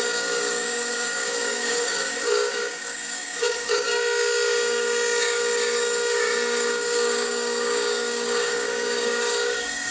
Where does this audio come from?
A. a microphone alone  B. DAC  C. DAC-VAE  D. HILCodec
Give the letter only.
B